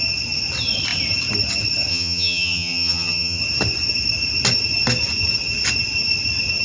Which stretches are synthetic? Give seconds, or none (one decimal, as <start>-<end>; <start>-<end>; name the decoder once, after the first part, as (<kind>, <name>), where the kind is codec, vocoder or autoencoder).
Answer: 1.9-3.4 (vocoder, HiFi-GAN)